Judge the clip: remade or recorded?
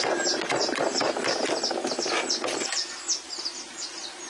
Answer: recorded